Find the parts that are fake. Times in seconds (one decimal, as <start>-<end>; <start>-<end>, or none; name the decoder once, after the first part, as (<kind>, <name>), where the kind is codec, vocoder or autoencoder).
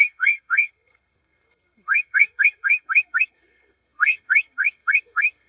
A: 0.0-5.5 (codec, SNAC)